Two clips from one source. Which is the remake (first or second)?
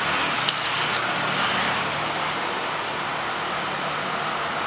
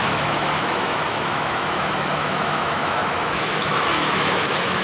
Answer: second